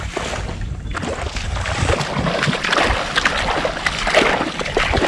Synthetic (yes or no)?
no